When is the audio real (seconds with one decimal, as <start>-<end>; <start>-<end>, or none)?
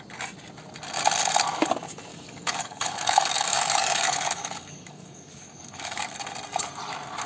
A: 0.0-2.1; 6.1-7.3